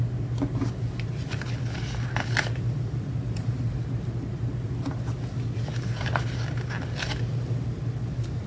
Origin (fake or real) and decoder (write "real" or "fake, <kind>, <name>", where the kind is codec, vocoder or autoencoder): real